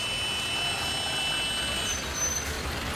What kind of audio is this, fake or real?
real